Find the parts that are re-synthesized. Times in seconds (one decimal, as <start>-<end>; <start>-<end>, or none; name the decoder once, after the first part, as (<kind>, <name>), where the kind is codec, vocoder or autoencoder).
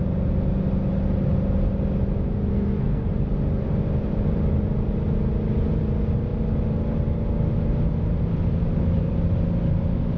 2.5-3.1 (codec, SNAC)